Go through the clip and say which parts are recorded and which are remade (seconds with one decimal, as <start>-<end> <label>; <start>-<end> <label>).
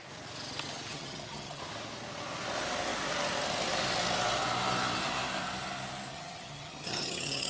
0.0-0.9 recorded; 0.9-1.6 remade; 1.6-6.1 recorded; 6.1-7.5 remade